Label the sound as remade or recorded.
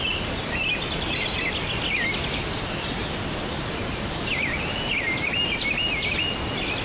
recorded